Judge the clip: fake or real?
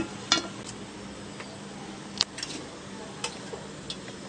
real